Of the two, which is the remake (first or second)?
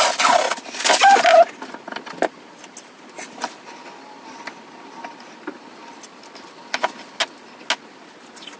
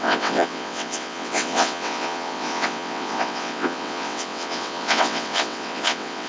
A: second